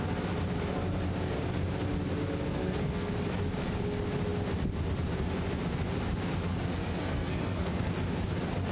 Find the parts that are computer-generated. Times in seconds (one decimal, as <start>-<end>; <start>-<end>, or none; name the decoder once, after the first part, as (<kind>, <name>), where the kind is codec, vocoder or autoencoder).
2.6-3.1 (codec, SNAC); 6.5-7.9